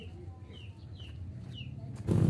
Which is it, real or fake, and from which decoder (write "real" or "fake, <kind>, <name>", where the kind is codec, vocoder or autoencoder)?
real